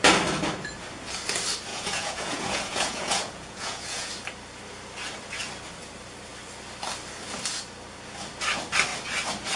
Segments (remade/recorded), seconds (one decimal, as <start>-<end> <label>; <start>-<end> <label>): 0.0-1.7 recorded; 1.7-4.1 remade; 4.1-9.6 recorded